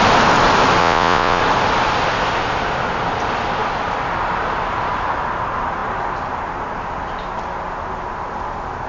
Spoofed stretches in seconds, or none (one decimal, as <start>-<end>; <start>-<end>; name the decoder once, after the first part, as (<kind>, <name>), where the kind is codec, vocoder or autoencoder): 0.8-1.4 (vocoder, Vocos)